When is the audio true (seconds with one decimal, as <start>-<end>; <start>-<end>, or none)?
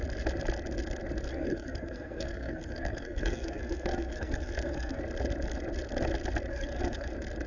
0.0-1.3; 5.0-6.5; 7.1-7.5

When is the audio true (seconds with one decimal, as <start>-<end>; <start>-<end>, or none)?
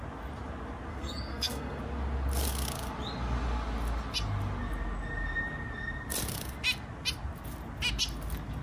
0.0-0.9; 1.8-8.6